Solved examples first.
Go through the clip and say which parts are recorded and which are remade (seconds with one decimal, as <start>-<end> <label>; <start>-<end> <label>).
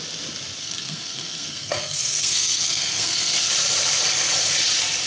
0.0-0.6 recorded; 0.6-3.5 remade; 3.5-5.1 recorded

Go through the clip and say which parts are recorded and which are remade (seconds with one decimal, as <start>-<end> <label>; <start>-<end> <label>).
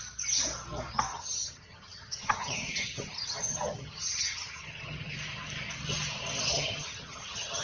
0.0-1.1 recorded; 1.1-5.1 remade; 5.1-6.5 recorded; 6.5-7.6 remade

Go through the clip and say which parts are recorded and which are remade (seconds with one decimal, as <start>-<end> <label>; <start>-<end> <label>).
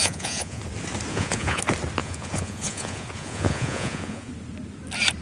0.0-0.6 remade; 0.6-1.1 recorded; 1.1-1.6 remade; 1.6-2.0 recorded; 2.0-4.3 remade; 4.3-5.2 recorded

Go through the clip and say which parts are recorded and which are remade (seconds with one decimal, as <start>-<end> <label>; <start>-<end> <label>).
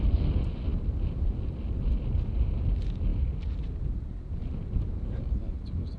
0.0-6.0 recorded